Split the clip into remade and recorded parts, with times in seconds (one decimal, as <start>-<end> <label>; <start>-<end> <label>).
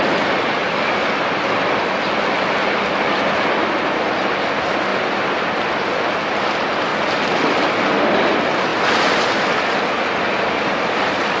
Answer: 0.0-11.4 recorded